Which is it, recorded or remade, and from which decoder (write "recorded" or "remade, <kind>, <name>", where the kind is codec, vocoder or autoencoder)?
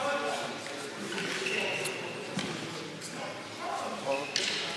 recorded